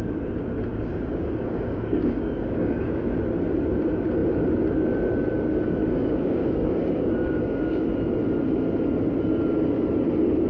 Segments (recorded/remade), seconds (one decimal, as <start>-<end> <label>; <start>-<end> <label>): 0.0-0.7 recorded; 0.7-3.2 remade; 3.2-5.8 recorded; 5.8-7.9 remade; 7.9-10.5 recorded